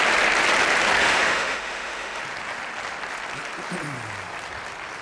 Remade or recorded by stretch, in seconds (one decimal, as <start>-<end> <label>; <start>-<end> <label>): 0.0-1.0 recorded; 1.0-2.2 remade; 2.2-5.0 recorded